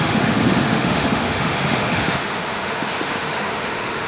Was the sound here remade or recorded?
remade